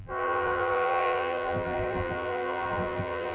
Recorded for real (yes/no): no